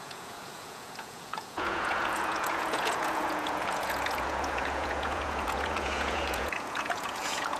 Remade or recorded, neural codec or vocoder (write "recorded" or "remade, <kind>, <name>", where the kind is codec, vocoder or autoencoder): remade, vocoder, Vocos